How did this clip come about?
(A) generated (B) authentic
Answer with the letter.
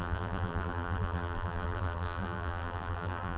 A